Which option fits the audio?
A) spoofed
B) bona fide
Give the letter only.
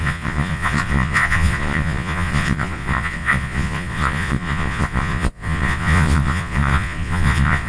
A